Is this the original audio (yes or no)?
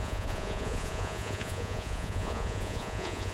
no